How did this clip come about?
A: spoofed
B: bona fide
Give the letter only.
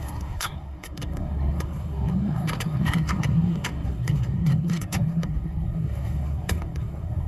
A